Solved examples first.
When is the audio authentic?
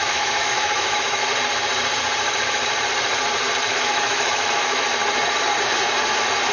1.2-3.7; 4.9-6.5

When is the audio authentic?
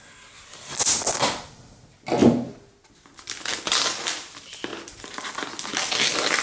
0.0-6.4